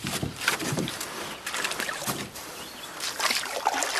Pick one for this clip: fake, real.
fake